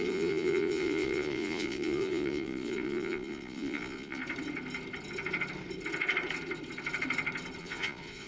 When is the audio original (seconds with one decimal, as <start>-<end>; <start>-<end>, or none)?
4.2-7.6